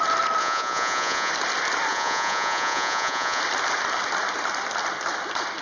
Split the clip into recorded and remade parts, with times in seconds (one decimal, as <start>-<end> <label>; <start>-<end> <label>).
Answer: 0.0-0.4 recorded; 0.4-1.3 remade; 1.3-1.9 recorded; 1.9-3.4 remade; 3.4-5.6 recorded